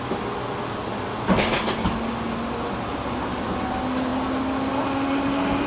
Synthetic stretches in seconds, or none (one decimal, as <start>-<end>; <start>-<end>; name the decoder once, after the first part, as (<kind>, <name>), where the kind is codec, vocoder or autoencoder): none